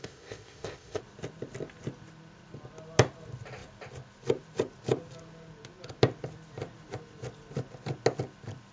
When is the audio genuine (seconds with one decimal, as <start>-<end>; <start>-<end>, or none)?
1.0-8.7